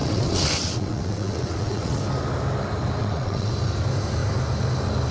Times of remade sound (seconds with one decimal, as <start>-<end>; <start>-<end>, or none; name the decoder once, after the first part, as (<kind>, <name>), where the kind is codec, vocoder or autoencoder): 0.0-2.0 (vocoder, WaveNeXt); 3.0-3.5